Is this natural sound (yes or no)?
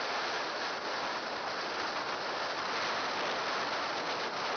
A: yes